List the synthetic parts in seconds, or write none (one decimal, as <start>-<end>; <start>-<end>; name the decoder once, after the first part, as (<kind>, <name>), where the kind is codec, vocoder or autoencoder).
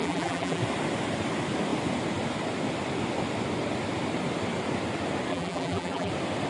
0.0-0.6 (vocoder, BigVGAN v2); 5.3-6.1